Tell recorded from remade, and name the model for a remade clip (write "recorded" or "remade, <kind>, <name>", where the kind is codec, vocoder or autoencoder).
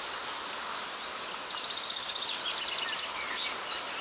recorded